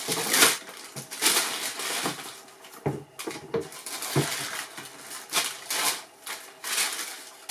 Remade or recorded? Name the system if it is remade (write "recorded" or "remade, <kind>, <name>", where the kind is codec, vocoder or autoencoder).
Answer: recorded